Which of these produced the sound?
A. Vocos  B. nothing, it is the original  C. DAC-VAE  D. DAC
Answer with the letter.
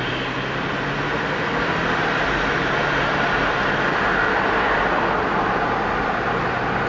B